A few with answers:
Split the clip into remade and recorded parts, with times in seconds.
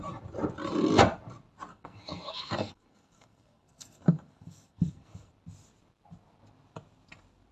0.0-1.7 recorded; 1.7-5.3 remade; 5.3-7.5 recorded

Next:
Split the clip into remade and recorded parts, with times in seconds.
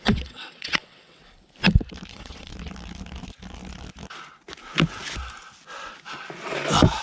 0.0-1.2 remade; 1.2-2.1 recorded; 2.1-2.5 remade; 2.5-7.0 recorded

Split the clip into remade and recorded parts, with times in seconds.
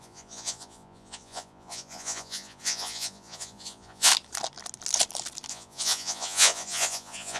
0.0-4.1 remade; 4.1-5.5 recorded; 5.5-7.4 remade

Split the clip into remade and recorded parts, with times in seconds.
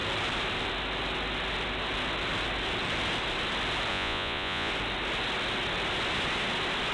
0.0-3.9 recorded; 3.9-4.7 remade; 4.7-6.9 recorded